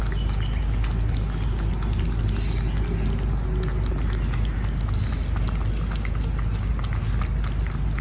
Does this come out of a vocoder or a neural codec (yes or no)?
no